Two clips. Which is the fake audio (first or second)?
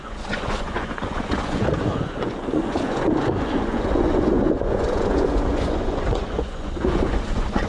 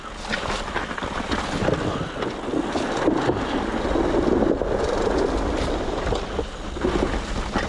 first